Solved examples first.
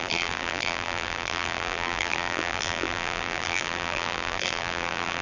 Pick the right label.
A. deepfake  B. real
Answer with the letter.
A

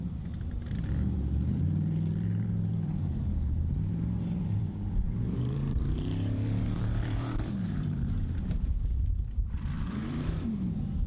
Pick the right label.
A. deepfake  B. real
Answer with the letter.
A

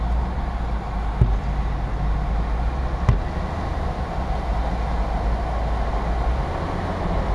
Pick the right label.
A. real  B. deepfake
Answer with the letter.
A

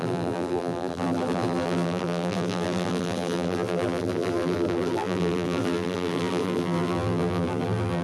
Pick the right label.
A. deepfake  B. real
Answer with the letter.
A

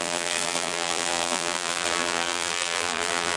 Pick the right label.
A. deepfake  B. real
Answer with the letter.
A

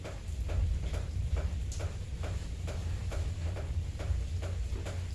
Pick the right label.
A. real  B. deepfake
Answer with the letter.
A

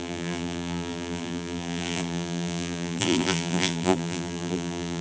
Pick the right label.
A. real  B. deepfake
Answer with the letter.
B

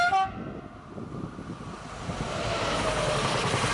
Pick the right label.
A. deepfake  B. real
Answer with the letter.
B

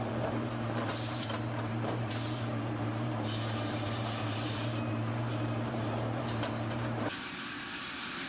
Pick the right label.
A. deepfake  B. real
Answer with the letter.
A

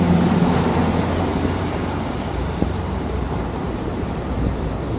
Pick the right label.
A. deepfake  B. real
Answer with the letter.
A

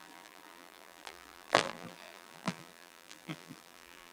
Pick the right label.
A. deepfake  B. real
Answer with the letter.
A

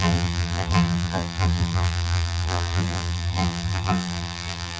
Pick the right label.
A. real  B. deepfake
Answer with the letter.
B